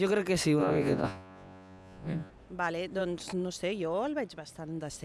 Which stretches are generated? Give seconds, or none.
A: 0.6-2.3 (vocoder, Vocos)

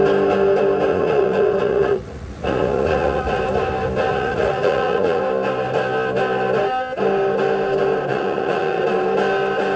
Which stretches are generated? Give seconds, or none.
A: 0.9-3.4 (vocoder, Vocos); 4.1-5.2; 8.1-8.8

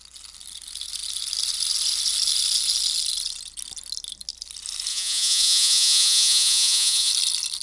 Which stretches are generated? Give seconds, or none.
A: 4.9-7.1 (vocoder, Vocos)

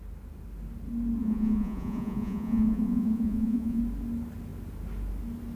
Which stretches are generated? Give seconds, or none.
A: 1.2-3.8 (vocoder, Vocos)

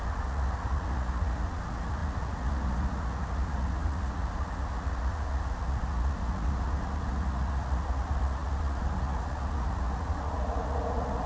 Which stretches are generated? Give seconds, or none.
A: 0.0-11.3 (vocoder, Vocos)

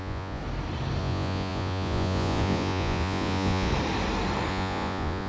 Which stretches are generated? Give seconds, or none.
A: 0.0-0.4 (vocoder, Vocos); 1.0-3.7; 4.5-5.3